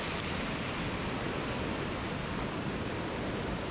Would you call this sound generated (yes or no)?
no